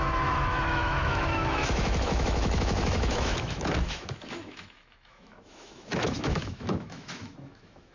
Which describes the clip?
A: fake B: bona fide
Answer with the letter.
A